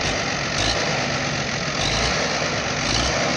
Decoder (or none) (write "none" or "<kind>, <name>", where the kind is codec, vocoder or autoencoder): none